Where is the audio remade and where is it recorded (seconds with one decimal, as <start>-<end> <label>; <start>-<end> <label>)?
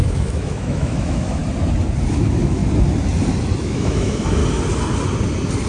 0.0-1.4 remade; 1.4-2.1 recorded; 2.1-2.6 remade; 2.6-3.6 recorded; 3.6-4.4 remade; 4.4-5.7 recorded